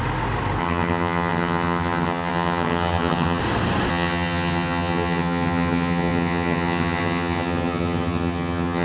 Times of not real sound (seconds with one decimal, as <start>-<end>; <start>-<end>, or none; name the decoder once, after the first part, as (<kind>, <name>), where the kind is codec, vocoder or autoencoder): 0.6-3.4 (vocoder, HiFi-GAN); 3.9-8.8